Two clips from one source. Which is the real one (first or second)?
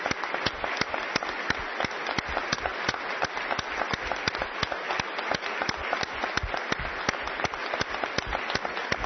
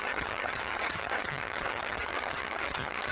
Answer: first